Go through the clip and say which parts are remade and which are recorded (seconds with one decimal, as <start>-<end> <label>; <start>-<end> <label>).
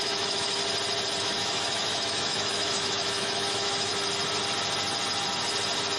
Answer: 0.0-0.6 remade; 0.6-1.2 recorded; 1.2-3.9 remade; 3.9-6.0 recorded